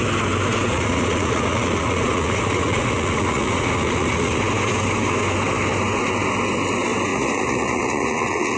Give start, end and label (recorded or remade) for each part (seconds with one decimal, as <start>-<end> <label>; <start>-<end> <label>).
0.0-0.7 recorded; 0.7-4.4 remade; 4.4-7.1 recorded; 7.1-8.6 remade